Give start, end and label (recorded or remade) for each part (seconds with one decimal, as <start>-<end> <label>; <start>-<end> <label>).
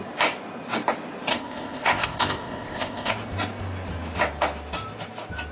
0.0-1.3 recorded; 1.3-3.1 remade; 3.1-5.5 recorded